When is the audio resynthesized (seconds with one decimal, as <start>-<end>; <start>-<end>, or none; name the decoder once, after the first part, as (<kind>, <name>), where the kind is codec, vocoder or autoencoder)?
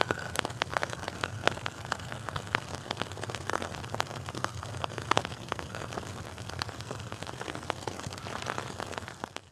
0.0-8.2 (codec, SNAC); 8.7-9.5